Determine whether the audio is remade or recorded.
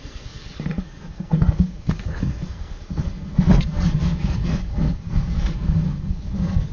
remade